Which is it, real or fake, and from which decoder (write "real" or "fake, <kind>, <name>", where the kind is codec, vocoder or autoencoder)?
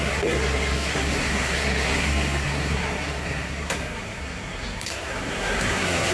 fake, codec, SNAC